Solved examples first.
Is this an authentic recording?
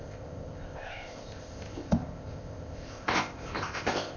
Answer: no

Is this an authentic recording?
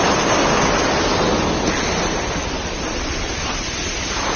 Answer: yes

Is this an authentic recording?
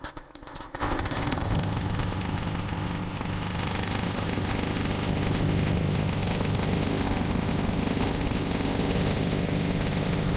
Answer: no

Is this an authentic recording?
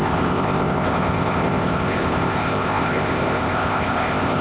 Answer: no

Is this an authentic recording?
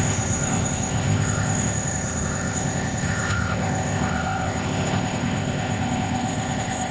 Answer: no